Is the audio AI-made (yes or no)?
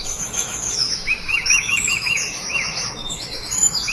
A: yes